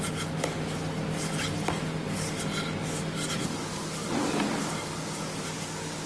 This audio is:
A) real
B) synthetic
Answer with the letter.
A